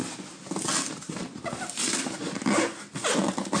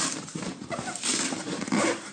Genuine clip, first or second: first